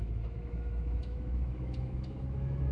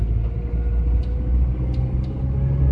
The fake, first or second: first